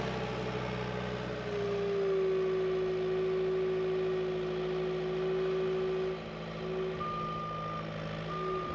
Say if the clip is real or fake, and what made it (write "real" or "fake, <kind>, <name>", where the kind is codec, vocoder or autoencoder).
real